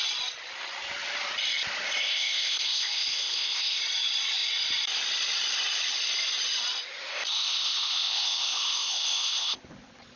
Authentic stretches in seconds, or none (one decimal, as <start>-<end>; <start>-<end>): 0.0-2.0; 3.8-7.1; 9.6-10.2